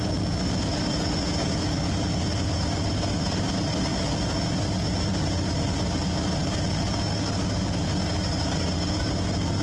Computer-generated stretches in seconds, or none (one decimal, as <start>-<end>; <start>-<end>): none